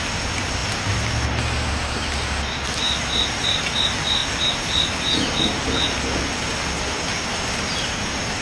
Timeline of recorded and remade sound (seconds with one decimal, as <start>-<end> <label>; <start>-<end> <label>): 0.0-8.4 recorded